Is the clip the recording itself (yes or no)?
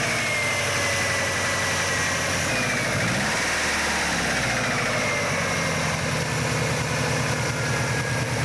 yes